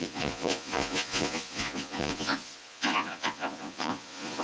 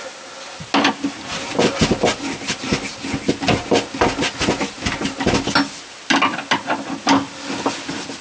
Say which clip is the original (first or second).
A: second